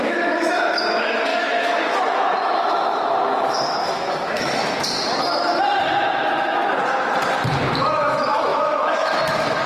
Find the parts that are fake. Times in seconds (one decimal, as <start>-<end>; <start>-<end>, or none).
0.0-4.6; 5.8-6.6; 8.0-9.7